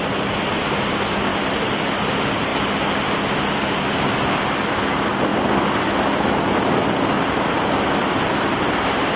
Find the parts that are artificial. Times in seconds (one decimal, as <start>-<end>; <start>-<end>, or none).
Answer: none